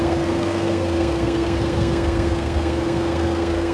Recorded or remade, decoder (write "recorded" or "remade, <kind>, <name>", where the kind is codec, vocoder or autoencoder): remade, codec, SNAC